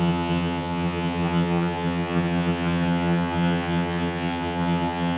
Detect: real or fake fake